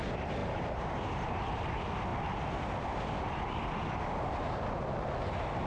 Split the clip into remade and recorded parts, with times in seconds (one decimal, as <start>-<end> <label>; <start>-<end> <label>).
0.0-0.4 recorded; 0.4-1.3 remade; 1.3-5.7 recorded